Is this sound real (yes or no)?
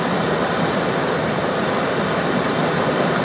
yes